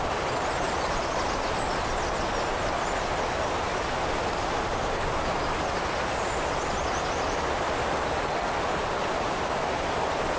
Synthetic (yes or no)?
no